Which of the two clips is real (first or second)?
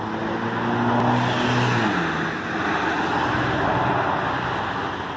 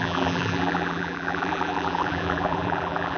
first